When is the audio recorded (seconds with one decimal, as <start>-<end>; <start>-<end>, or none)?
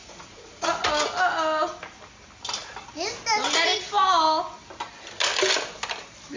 0.9-6.4